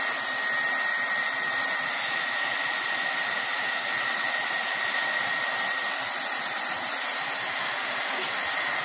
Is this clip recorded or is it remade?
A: remade